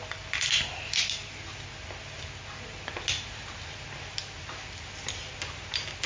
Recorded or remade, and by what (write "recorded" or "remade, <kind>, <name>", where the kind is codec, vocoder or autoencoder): recorded